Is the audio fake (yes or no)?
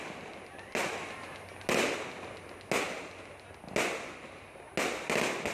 no